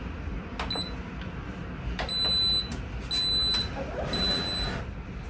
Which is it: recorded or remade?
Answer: recorded